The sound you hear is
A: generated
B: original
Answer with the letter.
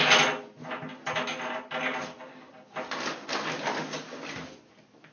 B